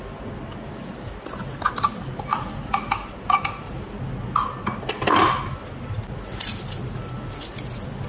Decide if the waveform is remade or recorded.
recorded